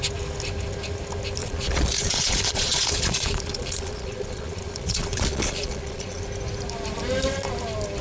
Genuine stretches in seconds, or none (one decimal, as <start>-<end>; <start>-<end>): 0.0-1.4; 6.2-8.0